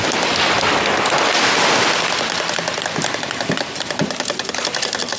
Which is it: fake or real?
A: real